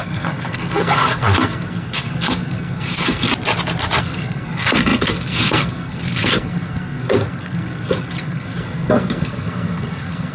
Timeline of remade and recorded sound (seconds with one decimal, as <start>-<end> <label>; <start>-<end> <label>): 0.0-3.3 remade; 3.3-4.0 recorded; 4.0-10.3 remade